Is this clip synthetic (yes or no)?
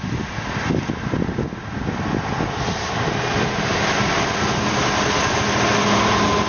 no